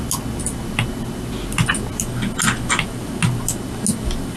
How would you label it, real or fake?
real